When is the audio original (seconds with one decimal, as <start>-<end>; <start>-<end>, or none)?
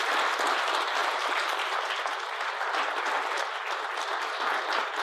0.0-1.0; 1.7-5.0